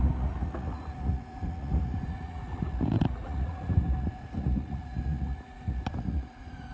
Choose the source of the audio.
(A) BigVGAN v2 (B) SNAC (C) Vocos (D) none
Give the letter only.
C